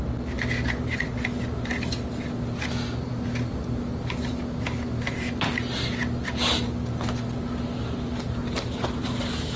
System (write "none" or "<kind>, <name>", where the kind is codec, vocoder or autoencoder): none